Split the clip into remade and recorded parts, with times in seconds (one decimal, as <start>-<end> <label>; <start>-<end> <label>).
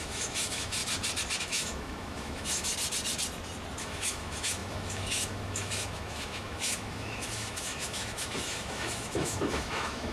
0.0-0.8 remade; 0.8-1.4 recorded; 1.4-2.7 remade; 2.7-3.8 recorded; 3.8-10.1 remade